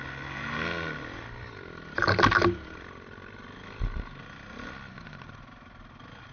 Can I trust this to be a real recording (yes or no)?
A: yes